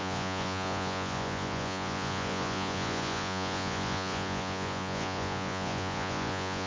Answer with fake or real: fake